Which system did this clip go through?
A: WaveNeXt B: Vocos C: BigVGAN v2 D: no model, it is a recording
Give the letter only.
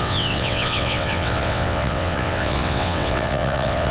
A